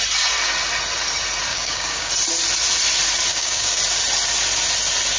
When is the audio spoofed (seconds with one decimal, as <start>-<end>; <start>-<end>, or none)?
1.5-2.1; 3.3-3.8